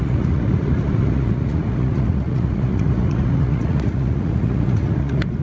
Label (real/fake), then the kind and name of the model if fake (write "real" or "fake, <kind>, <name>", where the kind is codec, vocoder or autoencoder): fake, vocoder, Vocos